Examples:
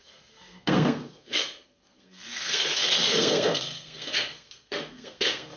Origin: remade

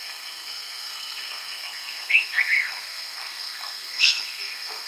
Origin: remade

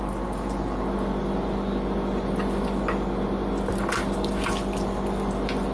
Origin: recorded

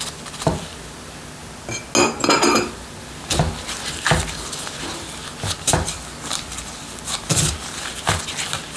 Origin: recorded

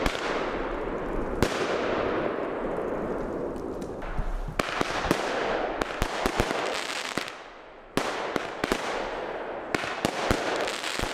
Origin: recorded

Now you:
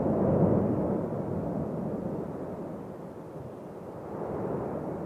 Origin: recorded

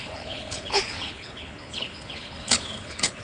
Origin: remade